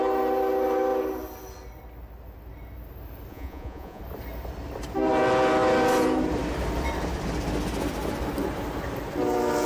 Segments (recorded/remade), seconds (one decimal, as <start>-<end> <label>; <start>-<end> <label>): 0.0-3.3 recorded; 3.3-4.0 remade; 4.0-9.7 recorded

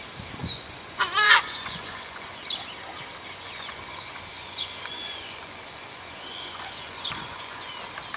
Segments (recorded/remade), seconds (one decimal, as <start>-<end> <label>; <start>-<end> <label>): 0.0-0.4 recorded; 0.4-2.4 remade; 2.4-3.3 recorded; 3.3-7.7 remade; 7.7-8.2 recorded

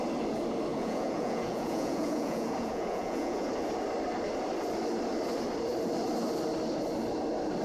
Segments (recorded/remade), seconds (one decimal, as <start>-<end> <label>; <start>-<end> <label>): 0.0-0.7 recorded; 0.7-3.5 remade; 3.5-7.6 recorded

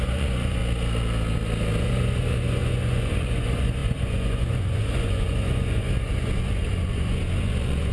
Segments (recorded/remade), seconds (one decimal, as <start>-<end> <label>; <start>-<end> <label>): 0.0-0.6 remade; 0.6-1.8 recorded; 1.8-7.9 remade

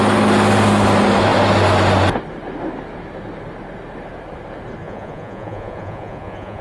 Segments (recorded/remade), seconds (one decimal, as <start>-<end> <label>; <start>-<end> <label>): 0.0-4.8 recorded; 4.8-6.6 remade

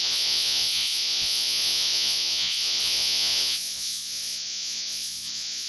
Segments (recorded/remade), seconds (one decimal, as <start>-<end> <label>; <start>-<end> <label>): 0.0-5.7 remade

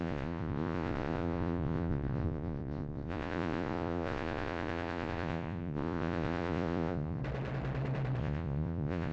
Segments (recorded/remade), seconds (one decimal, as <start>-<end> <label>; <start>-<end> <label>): 0.0-7.2 remade; 7.2-8.2 recorded; 8.2-9.1 remade